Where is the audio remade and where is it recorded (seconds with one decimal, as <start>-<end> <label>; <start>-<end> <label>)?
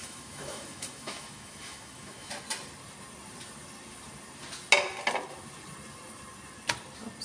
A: 0.0-2.3 remade; 2.3-7.2 recorded